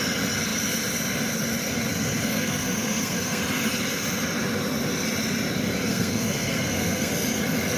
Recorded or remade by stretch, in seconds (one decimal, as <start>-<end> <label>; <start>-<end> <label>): 0.0-2.3 recorded; 2.3-3.4 remade; 3.4-5.9 recorded; 5.9-7.1 remade; 7.1-7.8 recorded